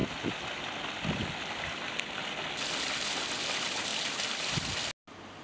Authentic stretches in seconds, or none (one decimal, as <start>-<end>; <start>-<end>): 0.0-5.4